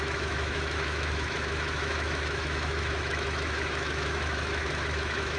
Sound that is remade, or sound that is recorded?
remade